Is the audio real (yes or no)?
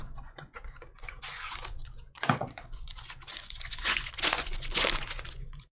no